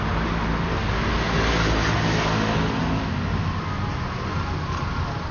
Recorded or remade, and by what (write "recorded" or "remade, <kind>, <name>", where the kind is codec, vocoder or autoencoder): recorded